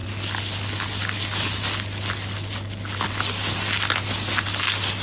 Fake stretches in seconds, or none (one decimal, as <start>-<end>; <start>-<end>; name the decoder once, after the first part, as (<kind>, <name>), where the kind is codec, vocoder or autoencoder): none